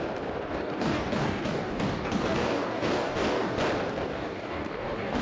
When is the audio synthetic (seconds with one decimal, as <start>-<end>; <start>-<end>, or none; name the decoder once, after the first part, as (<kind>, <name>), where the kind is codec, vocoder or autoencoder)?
0.5-3.6 (codec, DAC); 4.1-5.2